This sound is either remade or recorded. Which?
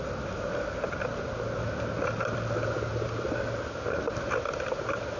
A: recorded